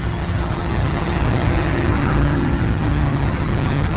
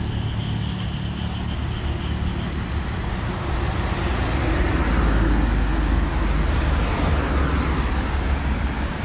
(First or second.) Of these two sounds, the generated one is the first